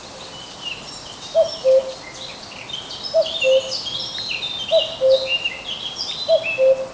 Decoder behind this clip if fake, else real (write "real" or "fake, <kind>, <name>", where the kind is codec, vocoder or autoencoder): real